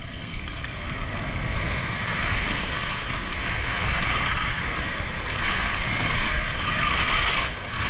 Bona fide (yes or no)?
no